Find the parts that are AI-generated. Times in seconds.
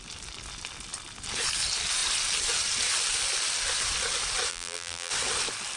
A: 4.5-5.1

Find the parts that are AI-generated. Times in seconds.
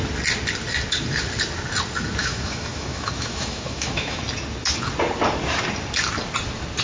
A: 2.2-4.2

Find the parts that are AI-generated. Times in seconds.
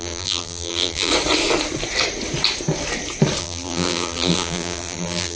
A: 0.0-1.1; 3.4-5.4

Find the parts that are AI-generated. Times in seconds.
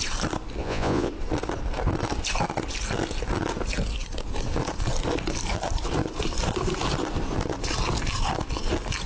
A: 0.6-1.1